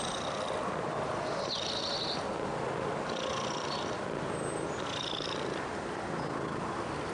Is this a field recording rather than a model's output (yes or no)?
yes